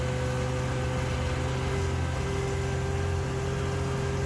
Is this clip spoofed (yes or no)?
no